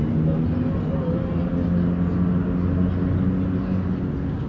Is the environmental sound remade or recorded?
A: recorded